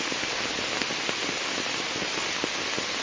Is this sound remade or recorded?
recorded